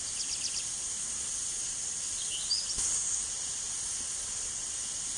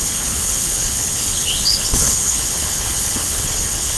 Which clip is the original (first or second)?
first